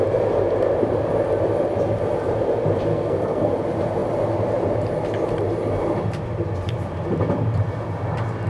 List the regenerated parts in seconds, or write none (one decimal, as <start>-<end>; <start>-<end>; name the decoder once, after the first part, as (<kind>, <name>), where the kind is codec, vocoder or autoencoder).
2.9-3.5 (codec, SNAC)